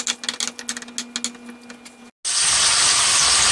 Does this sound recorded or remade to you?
recorded